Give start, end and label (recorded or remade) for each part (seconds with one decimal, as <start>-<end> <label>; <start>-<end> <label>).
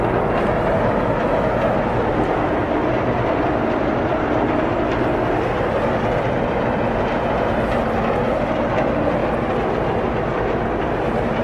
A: 0.0-2.6 recorded; 2.6-6.8 remade; 6.8-11.4 recorded